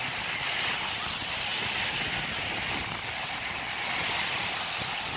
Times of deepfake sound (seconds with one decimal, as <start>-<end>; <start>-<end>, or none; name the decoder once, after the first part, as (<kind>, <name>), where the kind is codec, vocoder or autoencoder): none